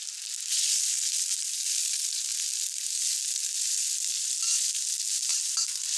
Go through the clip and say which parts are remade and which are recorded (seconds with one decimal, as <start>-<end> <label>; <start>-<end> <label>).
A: 0.0-6.0 recorded